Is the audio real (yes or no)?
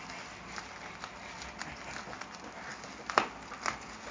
yes